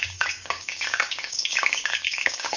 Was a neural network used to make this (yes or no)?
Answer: yes